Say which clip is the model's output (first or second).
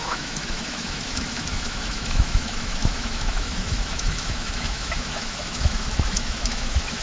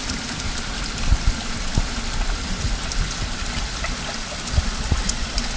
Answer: first